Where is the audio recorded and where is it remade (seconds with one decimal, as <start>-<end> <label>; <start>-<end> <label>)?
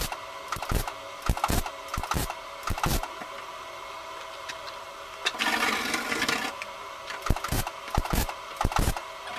0.0-9.4 recorded